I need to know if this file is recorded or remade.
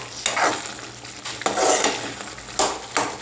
recorded